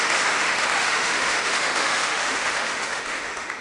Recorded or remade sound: remade